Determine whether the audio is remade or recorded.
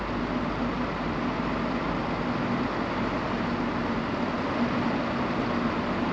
recorded